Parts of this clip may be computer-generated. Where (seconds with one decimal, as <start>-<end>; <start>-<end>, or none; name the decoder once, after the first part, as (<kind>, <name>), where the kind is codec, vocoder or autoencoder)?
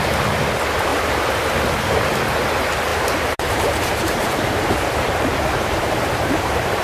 0.9-1.5 (vocoder, BigVGAN v2); 2.9-6.8